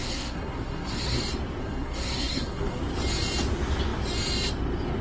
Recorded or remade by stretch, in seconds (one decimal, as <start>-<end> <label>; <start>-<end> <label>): 0.0-1.2 remade; 1.2-1.6 recorded; 1.6-2.8 remade; 2.8-5.0 recorded